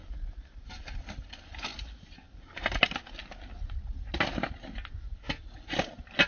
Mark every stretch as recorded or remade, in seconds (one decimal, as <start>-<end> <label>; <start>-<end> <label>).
0.0-6.3 recorded